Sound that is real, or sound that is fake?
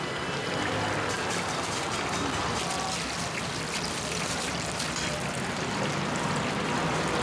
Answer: real